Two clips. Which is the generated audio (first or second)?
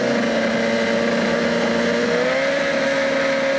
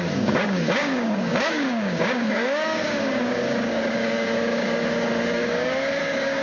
second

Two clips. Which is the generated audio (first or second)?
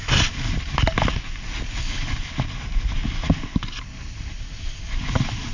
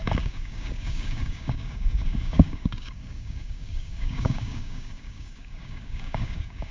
second